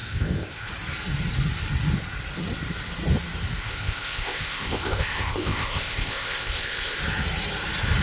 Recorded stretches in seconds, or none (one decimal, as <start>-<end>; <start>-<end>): 0.7-3.6; 7.0-8.0